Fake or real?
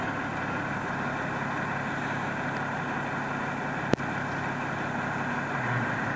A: real